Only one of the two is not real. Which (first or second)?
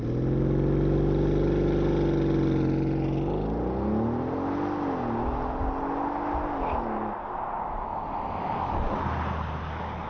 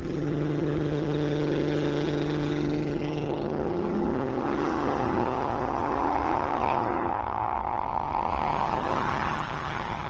second